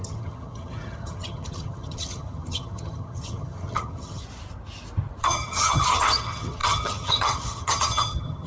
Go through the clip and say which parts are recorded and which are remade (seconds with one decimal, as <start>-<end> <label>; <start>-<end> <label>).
0.0-4.2 remade; 4.2-5.2 recorded; 5.2-8.5 remade